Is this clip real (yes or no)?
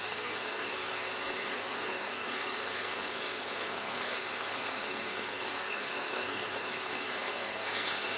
no